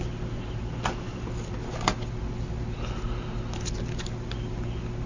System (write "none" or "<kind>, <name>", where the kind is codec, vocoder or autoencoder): none